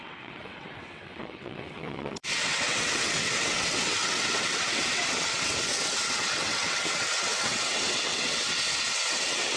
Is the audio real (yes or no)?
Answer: no